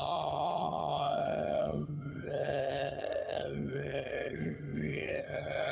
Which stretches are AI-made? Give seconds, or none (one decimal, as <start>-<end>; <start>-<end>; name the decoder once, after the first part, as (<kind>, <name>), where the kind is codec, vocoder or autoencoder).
0.0-5.7 (vocoder, HiFi-GAN)